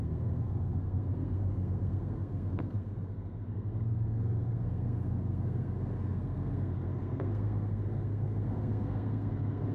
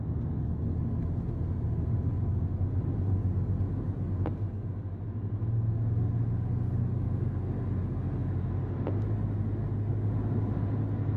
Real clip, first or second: second